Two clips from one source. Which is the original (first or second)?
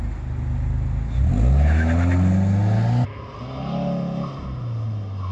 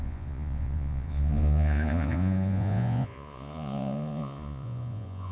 first